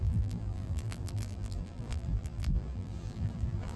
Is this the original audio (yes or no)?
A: no